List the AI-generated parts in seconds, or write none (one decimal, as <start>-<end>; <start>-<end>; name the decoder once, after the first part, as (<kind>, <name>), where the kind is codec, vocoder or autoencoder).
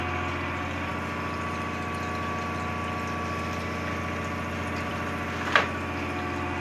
none